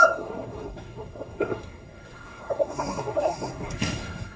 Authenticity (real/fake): fake